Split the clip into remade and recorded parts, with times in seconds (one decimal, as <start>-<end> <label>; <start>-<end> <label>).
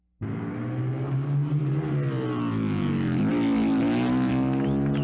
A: 0.0-5.0 recorded